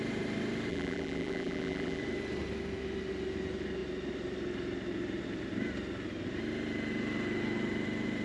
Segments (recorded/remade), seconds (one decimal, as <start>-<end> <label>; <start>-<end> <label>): 0.0-0.7 recorded; 0.7-2.0 remade; 2.0-8.2 recorded